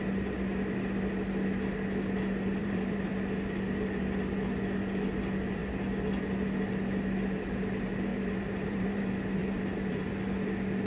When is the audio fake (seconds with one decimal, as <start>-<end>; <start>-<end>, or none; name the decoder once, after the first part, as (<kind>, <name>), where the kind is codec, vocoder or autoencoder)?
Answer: 2.6-3.1 (vocoder, BigVGAN v2); 8.1-9.0; 9.4-10.1